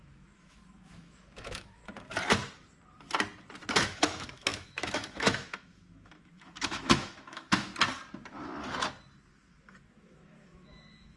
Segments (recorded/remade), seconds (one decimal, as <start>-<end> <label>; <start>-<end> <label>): 0.0-1.8 remade; 1.8-3.7 recorded; 3.7-7.7 remade; 7.7-9.5 recorded; 9.5-11.2 remade